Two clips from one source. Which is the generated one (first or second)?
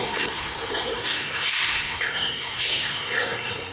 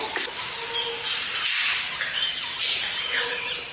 first